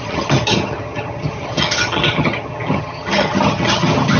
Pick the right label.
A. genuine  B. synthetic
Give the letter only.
B